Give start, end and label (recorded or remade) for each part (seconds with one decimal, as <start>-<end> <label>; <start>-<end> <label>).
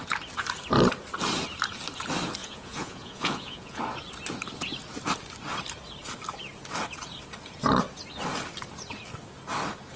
0.0-2.4 recorded; 2.4-3.8 remade; 3.8-10.0 recorded